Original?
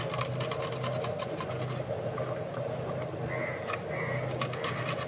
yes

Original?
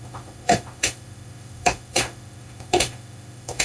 no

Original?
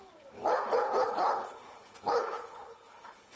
no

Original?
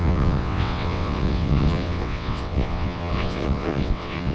no